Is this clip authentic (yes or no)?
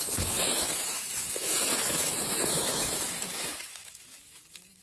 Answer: no